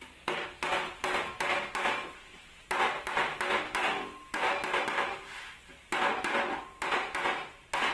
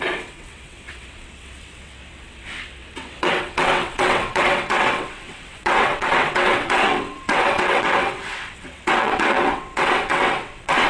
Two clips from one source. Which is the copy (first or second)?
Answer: second